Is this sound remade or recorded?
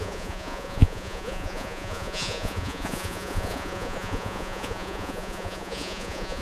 remade